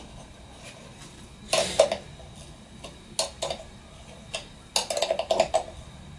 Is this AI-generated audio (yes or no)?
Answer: no